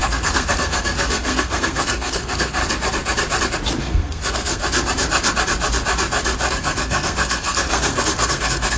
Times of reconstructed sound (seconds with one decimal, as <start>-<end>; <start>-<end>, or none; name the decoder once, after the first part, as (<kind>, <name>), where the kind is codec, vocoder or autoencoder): 0.0-2.6 (codec, SNAC); 3.8-4.6; 6.5-8.8